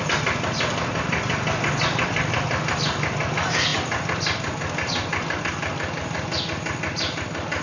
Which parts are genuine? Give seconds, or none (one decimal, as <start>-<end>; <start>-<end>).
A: 0.0-7.6